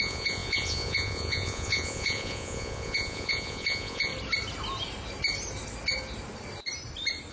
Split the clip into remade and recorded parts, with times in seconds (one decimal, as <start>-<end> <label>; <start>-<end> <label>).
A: 0.0-4.1 remade; 4.1-7.3 recorded